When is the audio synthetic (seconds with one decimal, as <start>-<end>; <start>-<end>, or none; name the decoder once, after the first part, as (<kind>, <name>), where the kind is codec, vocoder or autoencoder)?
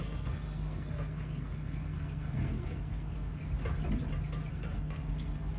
0.0-3.4 (codec, SNAC); 4.5-5.6